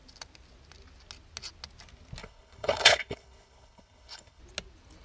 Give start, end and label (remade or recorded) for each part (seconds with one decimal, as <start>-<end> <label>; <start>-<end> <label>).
0.0-2.2 recorded; 2.2-4.4 remade; 4.4-5.0 recorded